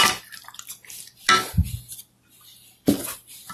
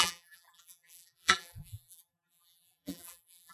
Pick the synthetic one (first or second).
second